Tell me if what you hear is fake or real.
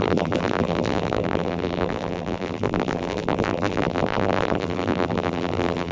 fake